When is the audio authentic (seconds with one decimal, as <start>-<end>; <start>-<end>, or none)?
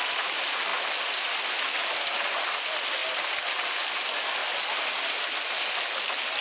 0.0-6.4